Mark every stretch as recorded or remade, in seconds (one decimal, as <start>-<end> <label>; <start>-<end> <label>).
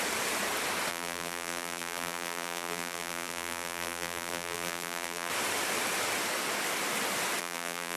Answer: 0.0-0.9 recorded; 0.9-5.3 remade; 5.3-7.4 recorded; 7.4-8.0 remade